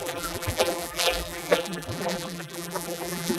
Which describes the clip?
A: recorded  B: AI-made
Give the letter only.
B